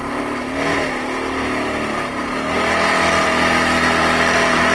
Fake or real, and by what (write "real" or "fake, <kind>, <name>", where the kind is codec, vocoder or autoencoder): real